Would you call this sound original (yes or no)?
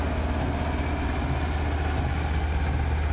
yes